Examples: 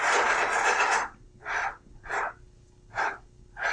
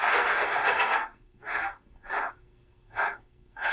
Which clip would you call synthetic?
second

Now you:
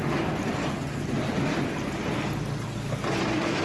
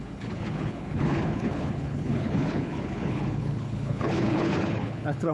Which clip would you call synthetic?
second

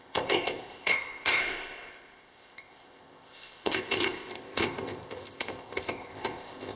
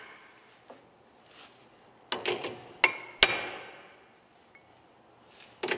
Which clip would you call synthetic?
first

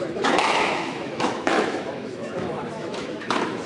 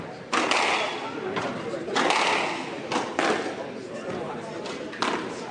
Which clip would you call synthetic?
first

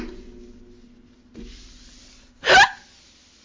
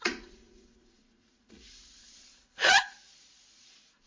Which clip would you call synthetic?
second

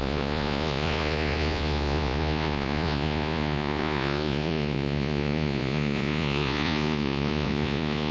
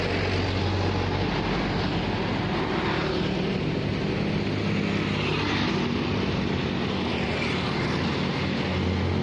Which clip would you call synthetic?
first